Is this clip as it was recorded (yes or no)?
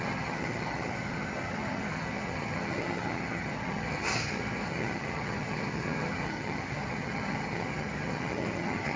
no